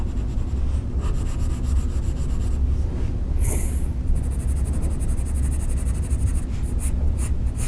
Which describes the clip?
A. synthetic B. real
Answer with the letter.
B